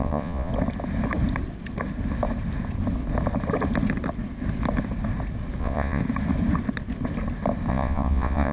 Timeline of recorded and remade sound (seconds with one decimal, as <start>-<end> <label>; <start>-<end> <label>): 0.0-0.5 remade; 0.5-5.6 recorded; 5.6-6.0 remade; 6.0-7.7 recorded; 7.7-8.5 remade

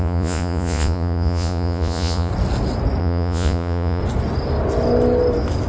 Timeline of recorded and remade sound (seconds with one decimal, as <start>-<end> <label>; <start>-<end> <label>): 0.0-2.3 remade; 2.3-3.0 recorded; 3.0-4.0 remade; 4.0-5.7 recorded

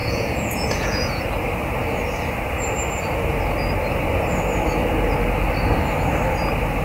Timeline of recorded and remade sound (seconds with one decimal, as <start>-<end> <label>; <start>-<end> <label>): 0.0-1.2 remade; 1.2-6.8 recorded

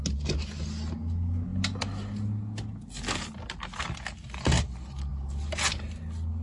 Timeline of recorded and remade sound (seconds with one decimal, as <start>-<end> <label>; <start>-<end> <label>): 0.0-6.4 recorded